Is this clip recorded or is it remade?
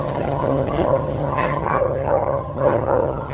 remade